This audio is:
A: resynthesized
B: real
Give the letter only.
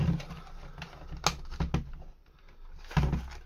B